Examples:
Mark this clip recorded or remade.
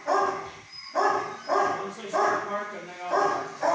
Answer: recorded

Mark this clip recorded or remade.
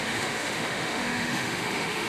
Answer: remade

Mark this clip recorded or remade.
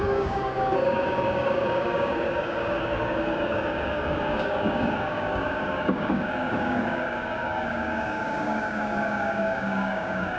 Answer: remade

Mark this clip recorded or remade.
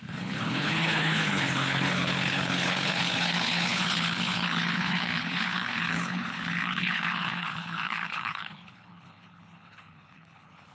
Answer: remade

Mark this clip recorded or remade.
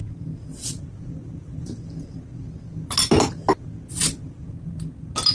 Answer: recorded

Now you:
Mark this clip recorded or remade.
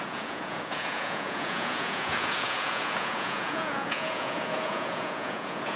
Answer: remade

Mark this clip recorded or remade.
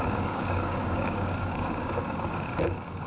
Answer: remade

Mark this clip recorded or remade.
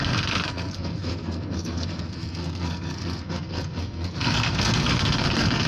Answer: remade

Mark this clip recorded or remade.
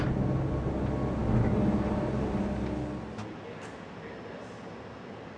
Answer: recorded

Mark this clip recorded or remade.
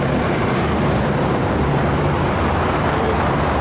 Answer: remade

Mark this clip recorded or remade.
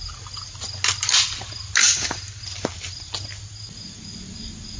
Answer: recorded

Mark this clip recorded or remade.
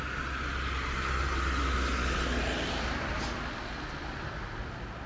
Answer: recorded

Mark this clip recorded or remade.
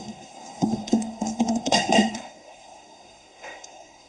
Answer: remade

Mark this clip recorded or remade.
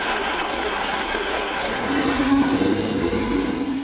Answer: remade